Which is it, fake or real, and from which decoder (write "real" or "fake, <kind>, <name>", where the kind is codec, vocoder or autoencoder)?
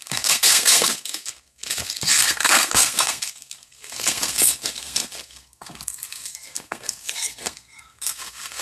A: fake, codec, SNAC